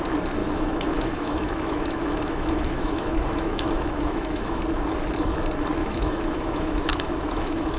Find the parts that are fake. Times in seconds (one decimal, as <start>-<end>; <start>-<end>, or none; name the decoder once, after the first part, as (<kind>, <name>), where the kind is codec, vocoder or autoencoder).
0.4-4.6 (autoencoder, DAC-VAE); 5.8-7.8